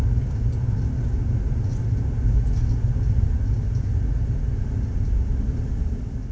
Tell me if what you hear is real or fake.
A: real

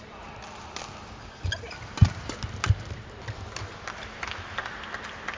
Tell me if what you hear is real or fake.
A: real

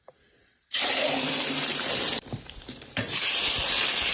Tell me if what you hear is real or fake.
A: fake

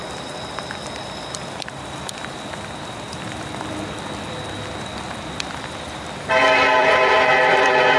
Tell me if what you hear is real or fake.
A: fake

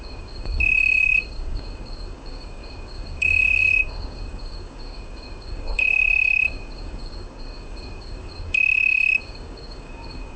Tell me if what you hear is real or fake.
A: fake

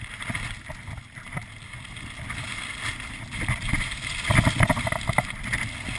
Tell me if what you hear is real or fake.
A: real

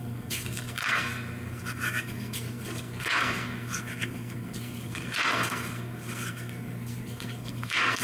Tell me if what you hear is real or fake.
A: fake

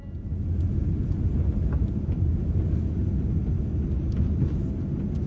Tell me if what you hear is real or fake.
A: real